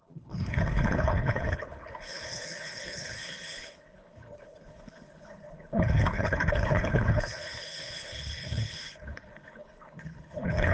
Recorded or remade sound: remade